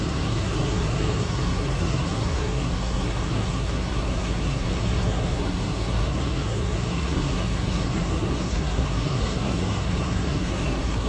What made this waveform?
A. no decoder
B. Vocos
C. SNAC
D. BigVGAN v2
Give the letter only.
C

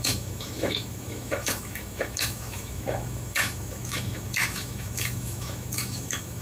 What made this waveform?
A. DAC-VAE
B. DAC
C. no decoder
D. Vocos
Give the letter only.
A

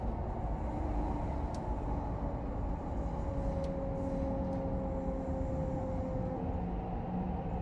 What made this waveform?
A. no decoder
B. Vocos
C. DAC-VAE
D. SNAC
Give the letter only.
A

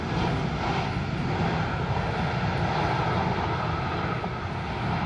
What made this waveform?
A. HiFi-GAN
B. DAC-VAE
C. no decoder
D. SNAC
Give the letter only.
C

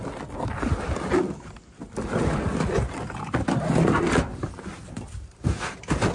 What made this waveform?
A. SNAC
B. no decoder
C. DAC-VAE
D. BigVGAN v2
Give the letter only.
B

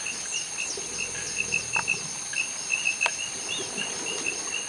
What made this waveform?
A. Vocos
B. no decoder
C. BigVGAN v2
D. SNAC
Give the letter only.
B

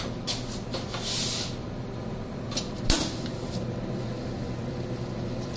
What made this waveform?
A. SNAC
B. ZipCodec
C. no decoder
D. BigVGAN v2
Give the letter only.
C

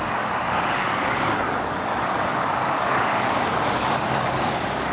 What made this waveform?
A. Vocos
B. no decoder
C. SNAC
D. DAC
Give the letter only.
D